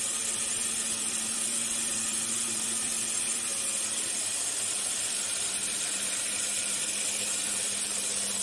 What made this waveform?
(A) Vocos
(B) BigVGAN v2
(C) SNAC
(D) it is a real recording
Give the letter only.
B